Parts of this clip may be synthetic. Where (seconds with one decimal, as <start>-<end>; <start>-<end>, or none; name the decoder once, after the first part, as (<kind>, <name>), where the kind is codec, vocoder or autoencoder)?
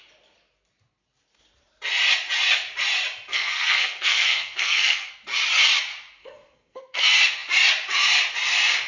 3.3-5.1 (codec, SNAC); 6.2-7.0